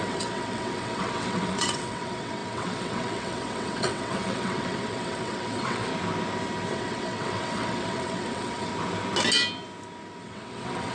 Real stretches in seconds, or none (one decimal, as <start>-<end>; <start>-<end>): 5.9-6.7; 8.7-10.2